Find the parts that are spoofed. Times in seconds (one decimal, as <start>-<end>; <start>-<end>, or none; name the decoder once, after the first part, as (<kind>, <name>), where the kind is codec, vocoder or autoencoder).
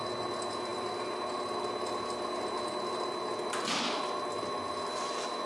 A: none